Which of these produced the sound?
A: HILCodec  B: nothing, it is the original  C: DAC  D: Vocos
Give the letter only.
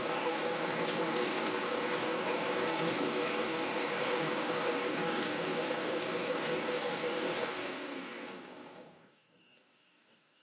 C